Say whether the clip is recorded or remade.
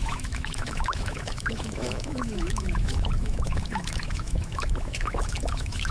remade